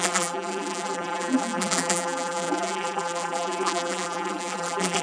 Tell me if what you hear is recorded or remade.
remade